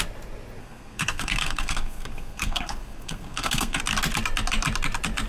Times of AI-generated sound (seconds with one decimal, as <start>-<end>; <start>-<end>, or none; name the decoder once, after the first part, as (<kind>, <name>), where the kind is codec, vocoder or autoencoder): 0.6-3.8 (codec, SNAC)